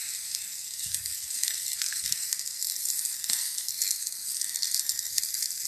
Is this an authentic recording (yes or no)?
no